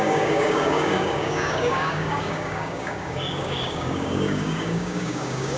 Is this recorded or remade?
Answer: remade